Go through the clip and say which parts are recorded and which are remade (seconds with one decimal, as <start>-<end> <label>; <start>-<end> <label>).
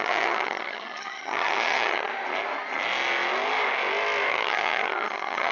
0.0-2.1 remade; 2.1-4.3 recorded; 4.3-5.5 remade